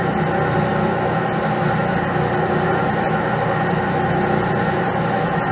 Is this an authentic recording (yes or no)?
yes